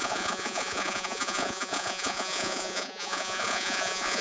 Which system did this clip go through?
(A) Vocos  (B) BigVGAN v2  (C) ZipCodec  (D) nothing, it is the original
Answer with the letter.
A